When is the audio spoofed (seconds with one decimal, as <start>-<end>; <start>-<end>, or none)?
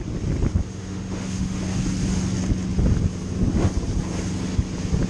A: 0.6-1.6